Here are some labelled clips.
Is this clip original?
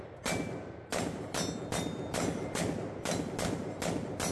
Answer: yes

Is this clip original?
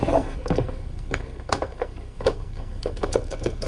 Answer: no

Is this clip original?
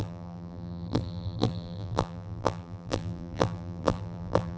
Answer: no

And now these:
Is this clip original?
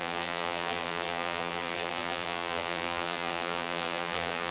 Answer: no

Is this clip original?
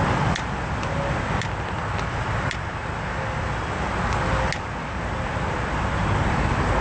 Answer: yes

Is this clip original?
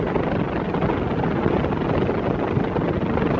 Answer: yes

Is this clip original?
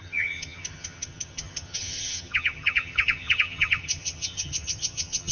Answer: no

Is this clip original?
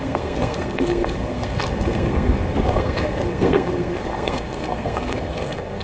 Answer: no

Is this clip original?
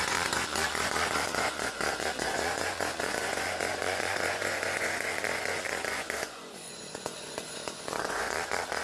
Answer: no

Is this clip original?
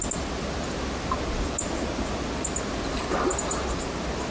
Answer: yes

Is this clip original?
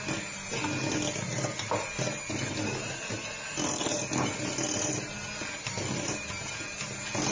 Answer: yes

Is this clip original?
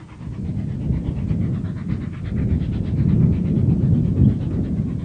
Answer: yes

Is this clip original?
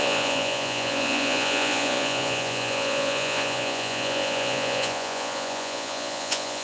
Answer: no